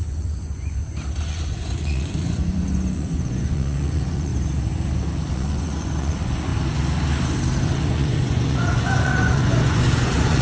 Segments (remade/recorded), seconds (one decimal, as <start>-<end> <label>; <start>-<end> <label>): 0.0-0.8 remade; 0.8-1.3 recorded; 1.3-4.3 remade; 4.3-5.3 recorded; 5.3-6.5 remade; 6.5-7.6 recorded; 7.6-10.4 remade